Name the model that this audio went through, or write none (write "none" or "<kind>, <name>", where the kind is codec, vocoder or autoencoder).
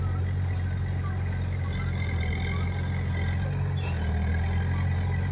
none